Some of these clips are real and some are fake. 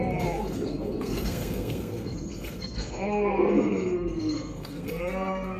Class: fake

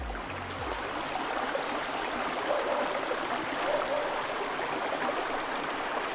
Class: real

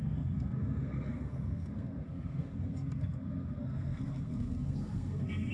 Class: fake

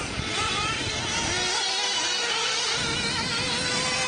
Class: real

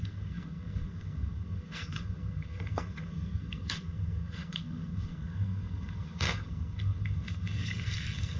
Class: fake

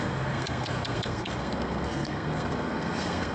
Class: fake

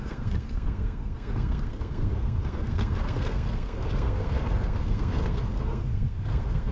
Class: fake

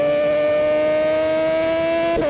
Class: real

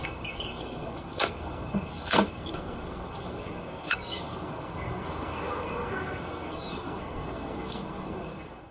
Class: fake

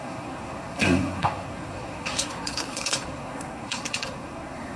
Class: fake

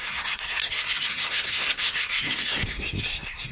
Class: fake